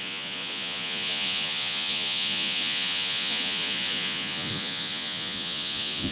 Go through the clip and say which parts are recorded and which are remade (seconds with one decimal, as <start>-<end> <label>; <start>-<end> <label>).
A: 0.0-6.1 remade